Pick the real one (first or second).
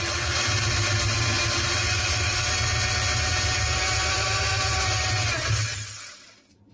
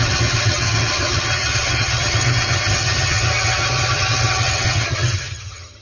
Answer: first